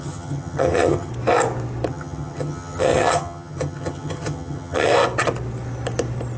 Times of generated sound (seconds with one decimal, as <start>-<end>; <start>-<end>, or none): 0.0-1.1; 1.9-4.9